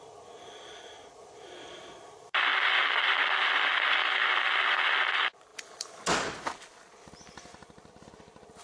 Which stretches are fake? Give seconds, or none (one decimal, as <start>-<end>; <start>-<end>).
none